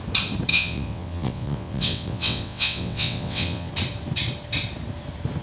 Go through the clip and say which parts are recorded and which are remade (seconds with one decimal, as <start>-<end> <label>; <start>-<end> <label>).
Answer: 0.0-0.5 recorded; 0.5-3.7 remade; 3.7-5.4 recorded